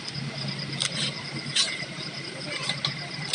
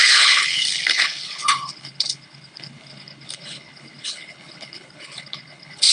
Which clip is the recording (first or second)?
first